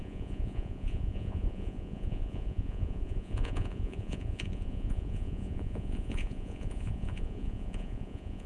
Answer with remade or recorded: remade